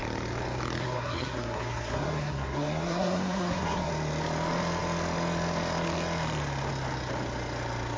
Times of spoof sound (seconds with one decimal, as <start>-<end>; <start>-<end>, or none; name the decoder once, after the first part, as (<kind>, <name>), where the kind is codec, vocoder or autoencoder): 0.8-3.9 (codec, SNAC)

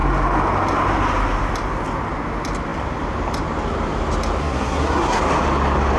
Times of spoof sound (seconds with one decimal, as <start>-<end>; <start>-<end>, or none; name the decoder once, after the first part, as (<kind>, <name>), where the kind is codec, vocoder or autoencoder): 4.4-5.2 (codec, SNAC)

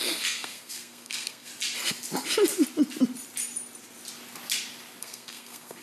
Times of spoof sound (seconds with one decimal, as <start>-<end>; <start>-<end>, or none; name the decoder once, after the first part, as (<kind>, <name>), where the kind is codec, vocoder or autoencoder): 0.0-1.5 (codec, SNAC); 5.0-5.8

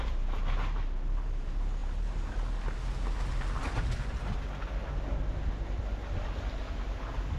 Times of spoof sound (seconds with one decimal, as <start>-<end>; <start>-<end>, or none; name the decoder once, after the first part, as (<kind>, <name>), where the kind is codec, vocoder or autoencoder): none

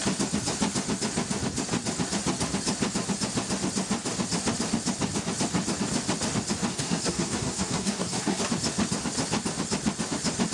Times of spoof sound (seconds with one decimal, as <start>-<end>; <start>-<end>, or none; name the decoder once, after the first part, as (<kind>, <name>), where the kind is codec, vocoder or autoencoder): 6.7-8.4 (codec, SNAC)

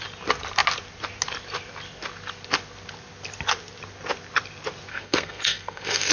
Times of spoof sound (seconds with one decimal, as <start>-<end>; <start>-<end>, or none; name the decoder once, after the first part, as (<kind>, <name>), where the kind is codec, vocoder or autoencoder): 4.9-6.1 (codec, SNAC)

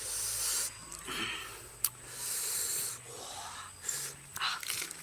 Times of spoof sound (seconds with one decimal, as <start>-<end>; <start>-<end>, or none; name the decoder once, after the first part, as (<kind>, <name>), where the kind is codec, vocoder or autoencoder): none

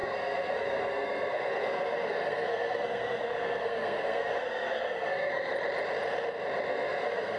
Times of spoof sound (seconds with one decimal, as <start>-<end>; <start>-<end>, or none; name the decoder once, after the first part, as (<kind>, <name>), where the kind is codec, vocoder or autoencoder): 0.0-5.5 (codec, SNAC); 6.7-7.4